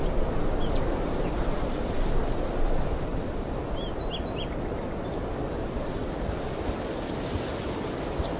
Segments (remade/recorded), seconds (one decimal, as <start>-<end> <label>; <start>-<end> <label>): 0.0-8.4 recorded